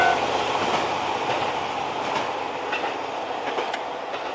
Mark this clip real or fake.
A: fake